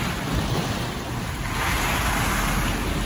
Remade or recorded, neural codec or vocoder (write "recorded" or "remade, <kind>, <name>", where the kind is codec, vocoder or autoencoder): recorded